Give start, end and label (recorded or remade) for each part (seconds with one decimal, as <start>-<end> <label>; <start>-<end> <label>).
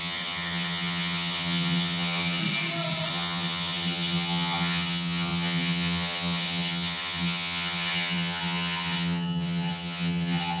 0.0-2.4 remade; 2.4-3.1 recorded; 3.1-10.6 remade